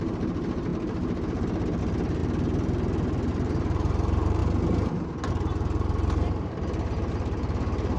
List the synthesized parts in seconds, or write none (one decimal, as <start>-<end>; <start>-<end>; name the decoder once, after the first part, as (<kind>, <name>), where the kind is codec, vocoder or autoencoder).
0.0-4.4 (vocoder, BigVGAN v2); 5.3-8.0